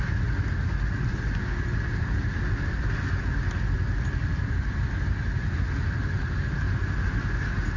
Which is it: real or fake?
real